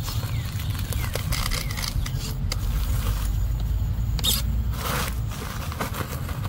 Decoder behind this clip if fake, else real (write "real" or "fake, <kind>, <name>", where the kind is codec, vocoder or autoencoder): real